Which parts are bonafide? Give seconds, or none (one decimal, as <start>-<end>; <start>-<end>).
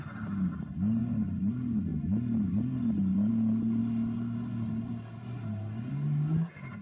0.0-6.8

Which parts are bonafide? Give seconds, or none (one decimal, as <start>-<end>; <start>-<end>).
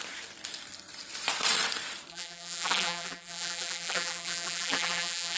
0.0-2.1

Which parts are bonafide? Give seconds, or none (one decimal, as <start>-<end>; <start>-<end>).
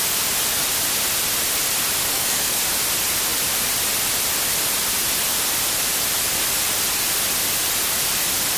0.0-2.1; 2.6-8.6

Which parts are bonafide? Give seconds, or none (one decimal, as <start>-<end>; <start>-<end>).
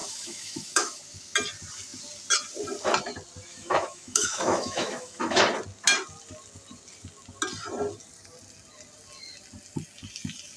1.0-3.5; 5.4-10.6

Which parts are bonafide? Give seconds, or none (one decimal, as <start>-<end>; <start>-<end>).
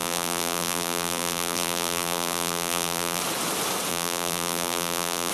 3.2-3.9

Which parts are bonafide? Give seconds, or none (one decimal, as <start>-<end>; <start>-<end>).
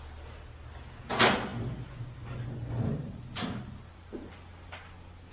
0.0-5.3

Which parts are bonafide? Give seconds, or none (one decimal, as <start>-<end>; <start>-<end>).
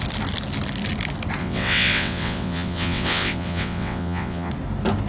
0.0-1.4; 4.5-5.1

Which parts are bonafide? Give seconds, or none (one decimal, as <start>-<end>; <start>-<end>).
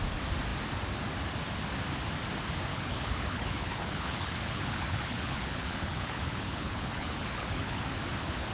0.0-2.7; 7.8-8.5